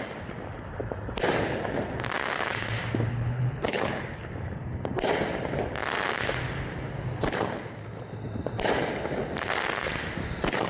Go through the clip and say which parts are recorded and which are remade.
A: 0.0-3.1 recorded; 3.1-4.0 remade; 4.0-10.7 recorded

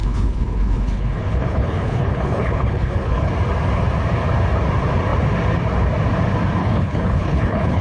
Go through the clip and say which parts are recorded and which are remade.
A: 0.0-3.3 remade; 3.3-6.6 recorded; 6.6-7.8 remade

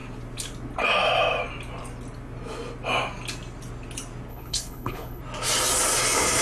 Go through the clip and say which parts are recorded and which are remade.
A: 0.0-4.3 recorded; 4.3-5.2 remade; 5.2-6.4 recorded

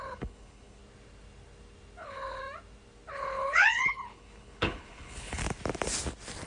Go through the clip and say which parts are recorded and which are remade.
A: 0.0-0.8 remade; 0.8-2.0 recorded; 2.0-2.4 remade; 2.4-3.1 recorded; 3.1-5.4 remade; 5.4-6.5 recorded

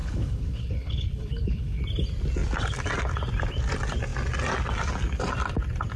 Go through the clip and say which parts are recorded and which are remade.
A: 0.0-1.8 remade; 1.8-6.0 recorded

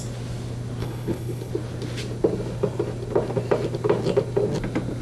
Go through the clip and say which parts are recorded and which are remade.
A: 0.0-0.8 recorded; 0.8-1.5 remade; 1.5-5.0 recorded

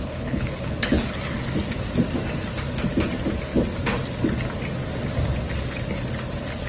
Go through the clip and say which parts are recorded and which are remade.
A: 0.0-1.0 remade; 1.0-6.7 recorded